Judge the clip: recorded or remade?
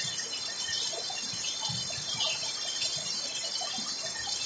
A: recorded